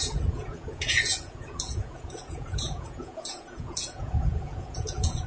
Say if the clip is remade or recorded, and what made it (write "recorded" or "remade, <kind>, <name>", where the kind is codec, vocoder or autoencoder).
remade, vocoder, Vocos